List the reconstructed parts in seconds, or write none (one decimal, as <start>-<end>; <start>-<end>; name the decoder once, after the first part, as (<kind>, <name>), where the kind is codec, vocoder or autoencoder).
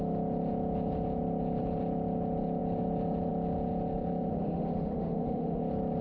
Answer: 4.3-5.6 (autoencoder, DAC-VAE)